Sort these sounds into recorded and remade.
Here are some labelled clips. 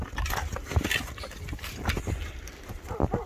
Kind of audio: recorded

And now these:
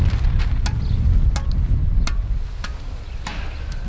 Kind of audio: recorded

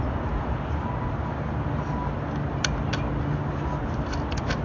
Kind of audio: recorded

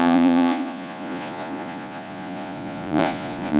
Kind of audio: remade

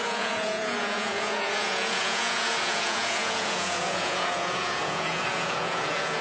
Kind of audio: remade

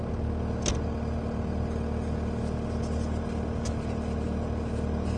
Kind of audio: recorded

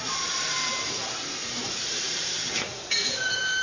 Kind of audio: remade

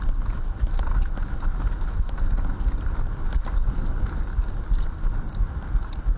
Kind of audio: recorded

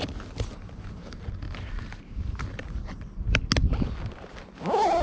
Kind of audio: recorded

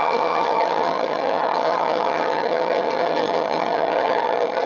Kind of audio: remade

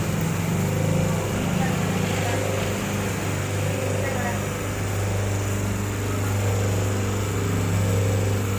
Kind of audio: recorded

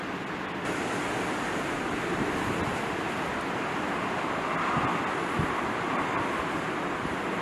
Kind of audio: recorded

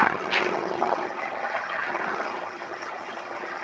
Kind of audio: remade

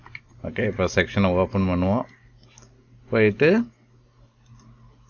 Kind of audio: recorded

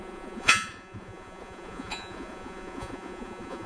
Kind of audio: remade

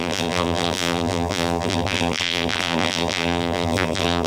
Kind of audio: remade